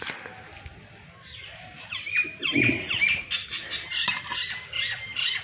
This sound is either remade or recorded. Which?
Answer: recorded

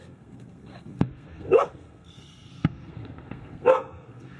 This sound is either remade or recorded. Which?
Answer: remade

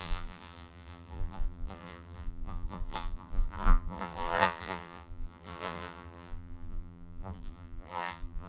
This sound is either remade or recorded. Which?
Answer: remade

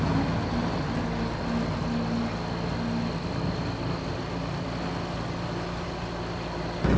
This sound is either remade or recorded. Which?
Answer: recorded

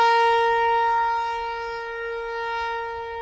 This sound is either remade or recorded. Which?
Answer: recorded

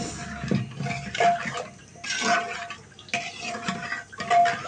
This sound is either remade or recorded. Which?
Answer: recorded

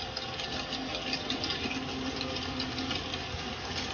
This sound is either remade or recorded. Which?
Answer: recorded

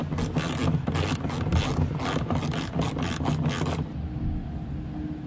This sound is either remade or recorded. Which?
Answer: recorded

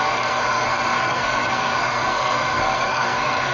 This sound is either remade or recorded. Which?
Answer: remade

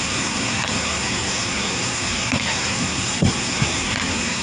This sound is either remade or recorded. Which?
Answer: remade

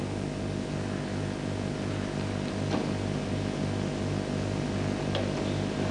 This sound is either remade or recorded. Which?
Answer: recorded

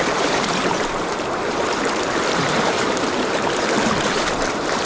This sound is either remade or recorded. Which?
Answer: remade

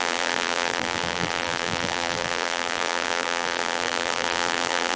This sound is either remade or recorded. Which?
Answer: remade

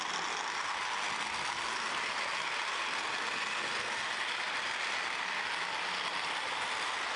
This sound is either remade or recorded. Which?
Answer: recorded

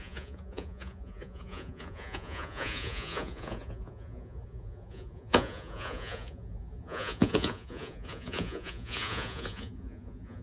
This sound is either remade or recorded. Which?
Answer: remade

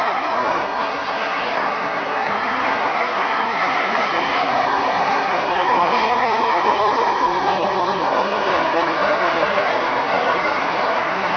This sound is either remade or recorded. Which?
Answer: remade